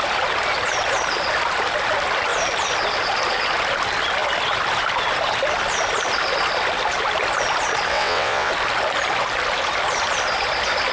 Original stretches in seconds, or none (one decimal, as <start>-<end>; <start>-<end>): 0.0-7.9; 8.5-10.9

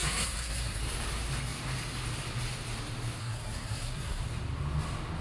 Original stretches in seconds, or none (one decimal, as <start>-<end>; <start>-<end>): 0.8-3.2; 4.2-5.2